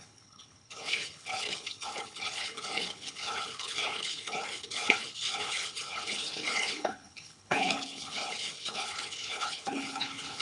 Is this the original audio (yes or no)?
no